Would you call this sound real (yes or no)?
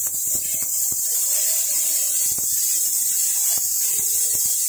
no